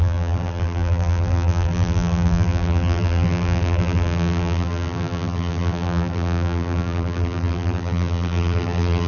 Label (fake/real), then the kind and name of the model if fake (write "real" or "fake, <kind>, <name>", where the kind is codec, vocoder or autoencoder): fake, vocoder, BigVGAN v2